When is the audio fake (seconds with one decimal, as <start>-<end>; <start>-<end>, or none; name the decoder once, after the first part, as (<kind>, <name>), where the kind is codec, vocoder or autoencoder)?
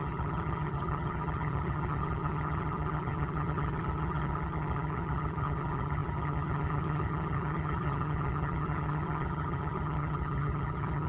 0.0-11.1 (vocoder, HiFi-GAN)